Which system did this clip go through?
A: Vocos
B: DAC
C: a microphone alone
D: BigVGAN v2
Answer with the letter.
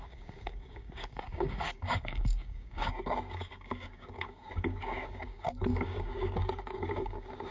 B